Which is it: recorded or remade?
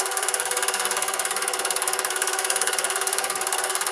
remade